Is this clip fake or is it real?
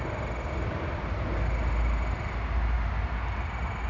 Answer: real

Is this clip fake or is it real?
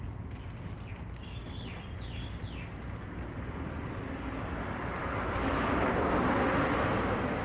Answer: real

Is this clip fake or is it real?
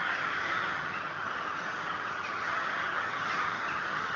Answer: fake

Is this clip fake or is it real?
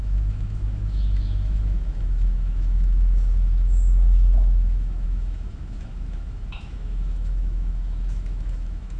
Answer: fake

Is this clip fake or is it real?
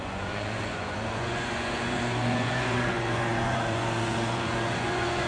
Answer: fake